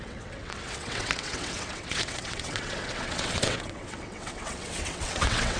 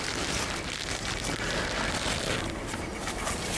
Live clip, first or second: second